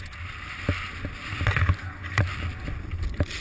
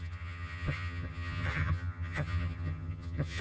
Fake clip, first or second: second